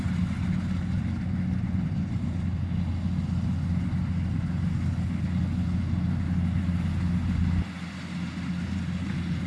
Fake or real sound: real